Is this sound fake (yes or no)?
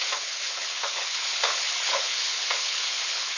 yes